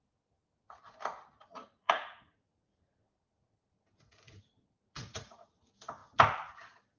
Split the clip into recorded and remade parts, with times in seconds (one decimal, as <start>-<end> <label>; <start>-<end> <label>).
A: 0.0-1.6 recorded; 1.6-5.6 remade; 5.6-7.0 recorded